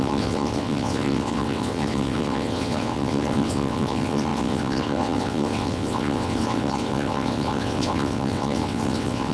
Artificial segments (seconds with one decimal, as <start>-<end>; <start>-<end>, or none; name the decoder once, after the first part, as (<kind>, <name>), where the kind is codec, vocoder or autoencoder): 0.0-9.3 (vocoder, WaveNeXt)